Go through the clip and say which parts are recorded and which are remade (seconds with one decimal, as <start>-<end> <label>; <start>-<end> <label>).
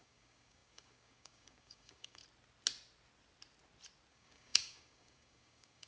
0.0-2.2 remade; 2.2-4.1 recorded; 4.1-5.9 remade